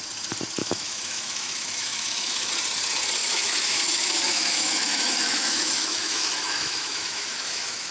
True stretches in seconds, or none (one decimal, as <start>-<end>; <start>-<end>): 0.0-0.6; 2.5-3.2